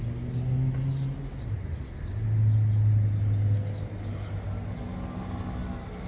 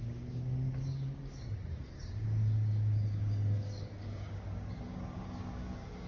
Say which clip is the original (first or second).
first